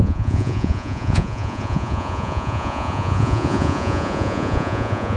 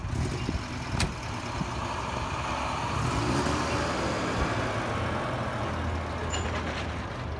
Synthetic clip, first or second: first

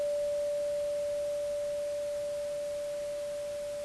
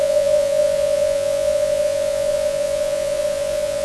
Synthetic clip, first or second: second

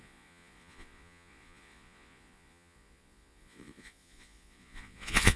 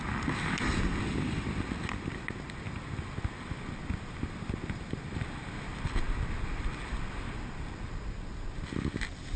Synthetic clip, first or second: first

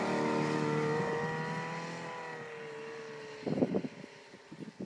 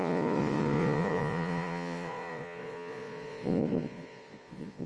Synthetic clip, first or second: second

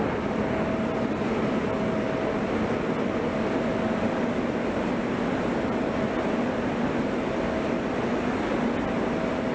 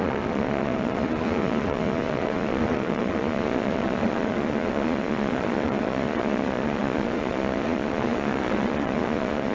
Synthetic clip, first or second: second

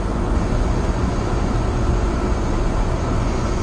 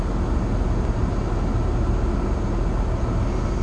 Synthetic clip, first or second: first